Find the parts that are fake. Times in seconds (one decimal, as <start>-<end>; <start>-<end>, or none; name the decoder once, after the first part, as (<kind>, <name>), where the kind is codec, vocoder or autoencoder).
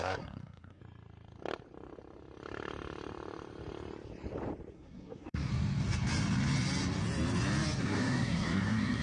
0.0-0.8 (codec, SNAC); 4.7-5.5; 7.8-9.0